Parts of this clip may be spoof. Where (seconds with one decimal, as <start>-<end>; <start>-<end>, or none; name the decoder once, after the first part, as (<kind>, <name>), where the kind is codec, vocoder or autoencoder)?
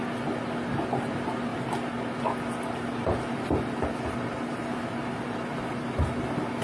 none